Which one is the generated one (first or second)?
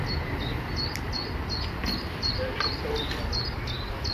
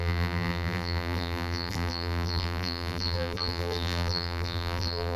second